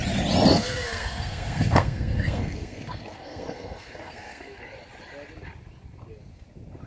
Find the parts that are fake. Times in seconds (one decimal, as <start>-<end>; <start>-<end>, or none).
0.5-4.6